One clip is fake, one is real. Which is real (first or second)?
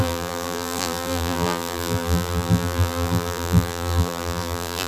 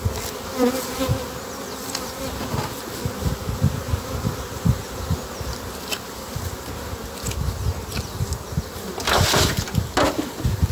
second